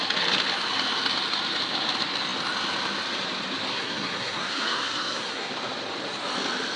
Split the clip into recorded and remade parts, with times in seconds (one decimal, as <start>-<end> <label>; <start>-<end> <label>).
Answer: 0.0-3.7 recorded; 3.7-5.5 remade; 5.5-6.8 recorded